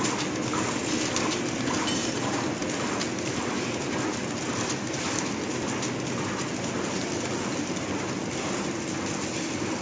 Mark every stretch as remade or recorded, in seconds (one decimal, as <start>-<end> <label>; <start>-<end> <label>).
0.0-9.8 recorded